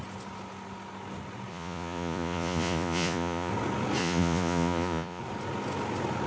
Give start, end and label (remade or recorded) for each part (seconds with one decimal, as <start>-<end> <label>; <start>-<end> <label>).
0.0-1.5 recorded; 1.5-3.5 remade; 3.5-4.0 recorded; 4.0-5.2 remade; 5.2-6.3 recorded